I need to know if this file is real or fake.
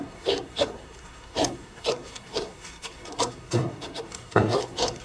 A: fake